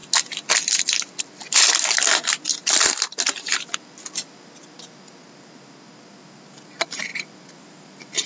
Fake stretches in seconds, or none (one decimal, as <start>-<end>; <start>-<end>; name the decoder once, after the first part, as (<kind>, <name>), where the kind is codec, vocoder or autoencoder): none